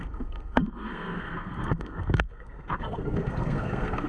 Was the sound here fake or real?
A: fake